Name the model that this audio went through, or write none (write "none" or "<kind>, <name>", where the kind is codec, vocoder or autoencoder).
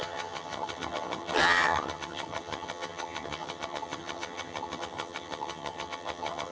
vocoder, HiFi-GAN